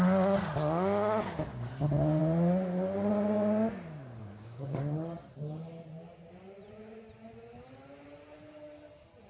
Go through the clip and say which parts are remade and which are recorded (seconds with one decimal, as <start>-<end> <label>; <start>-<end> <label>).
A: 0.0-4.2 recorded; 4.2-4.8 remade; 4.8-9.3 recorded